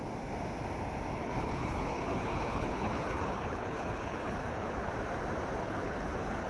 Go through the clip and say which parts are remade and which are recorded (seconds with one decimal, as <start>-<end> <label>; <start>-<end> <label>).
0.0-1.2 recorded; 1.2-4.9 remade; 4.9-5.6 recorded; 5.6-6.5 remade